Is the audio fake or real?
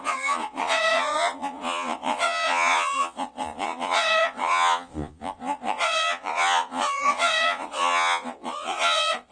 fake